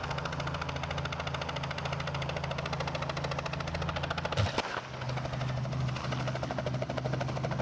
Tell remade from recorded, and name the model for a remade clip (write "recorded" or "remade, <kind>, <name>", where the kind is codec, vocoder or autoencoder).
recorded